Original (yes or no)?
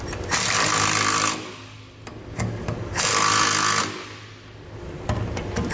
yes